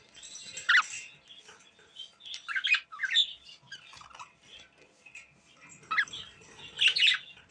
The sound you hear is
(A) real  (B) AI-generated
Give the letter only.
A